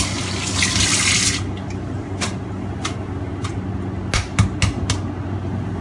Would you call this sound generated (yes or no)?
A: no